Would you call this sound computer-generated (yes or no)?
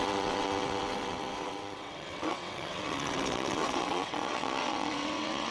yes